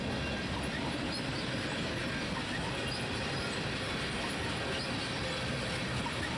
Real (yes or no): yes